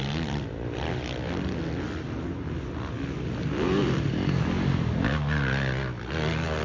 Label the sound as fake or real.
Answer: real